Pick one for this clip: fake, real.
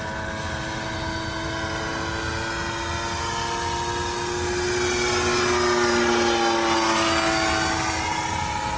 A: real